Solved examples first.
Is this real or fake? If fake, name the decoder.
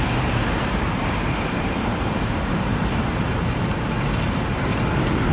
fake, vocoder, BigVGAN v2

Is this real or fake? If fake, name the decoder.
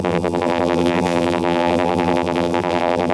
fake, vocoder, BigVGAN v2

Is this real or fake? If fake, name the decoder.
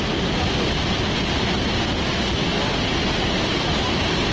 real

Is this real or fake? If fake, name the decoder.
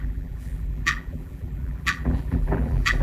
fake, vocoder, BigVGAN v2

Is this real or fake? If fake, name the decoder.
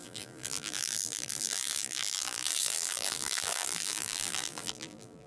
fake, vocoder, BigVGAN v2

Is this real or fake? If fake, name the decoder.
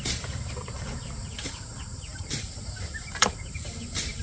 fake, vocoder, BigVGAN v2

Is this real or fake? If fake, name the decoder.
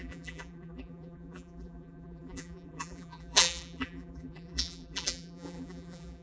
fake, vocoder, BigVGAN v2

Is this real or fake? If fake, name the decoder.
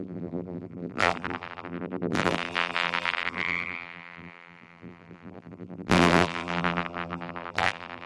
fake, vocoder, BigVGAN v2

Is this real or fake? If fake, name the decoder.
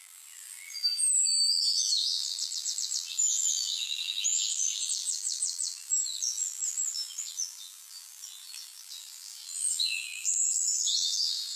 fake, vocoder, BigVGAN v2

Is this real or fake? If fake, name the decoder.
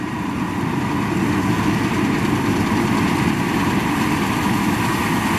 real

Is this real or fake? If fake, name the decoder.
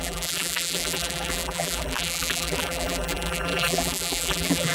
fake, vocoder, BigVGAN v2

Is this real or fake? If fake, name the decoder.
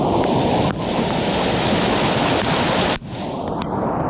fake, vocoder, BigVGAN v2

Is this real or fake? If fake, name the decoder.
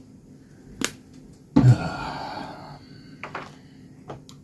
real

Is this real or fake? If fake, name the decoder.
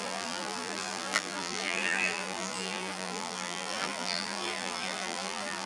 fake, vocoder, BigVGAN v2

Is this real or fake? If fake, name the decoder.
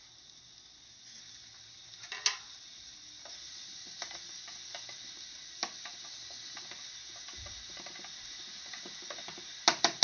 real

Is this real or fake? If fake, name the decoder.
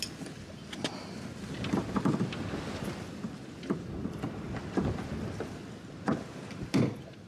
real